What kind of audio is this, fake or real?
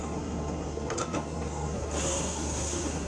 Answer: fake